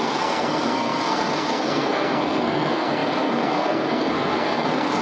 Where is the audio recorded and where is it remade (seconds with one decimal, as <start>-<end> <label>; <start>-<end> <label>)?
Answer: 0.0-5.0 remade